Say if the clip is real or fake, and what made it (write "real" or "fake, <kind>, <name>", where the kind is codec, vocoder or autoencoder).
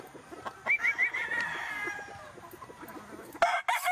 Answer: real